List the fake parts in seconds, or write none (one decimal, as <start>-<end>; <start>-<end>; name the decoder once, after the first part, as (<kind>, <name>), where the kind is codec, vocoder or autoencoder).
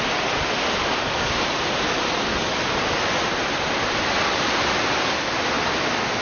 0.8-1.3 (codec, DAC)